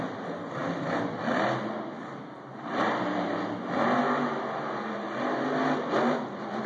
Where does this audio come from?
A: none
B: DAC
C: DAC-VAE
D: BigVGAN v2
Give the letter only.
A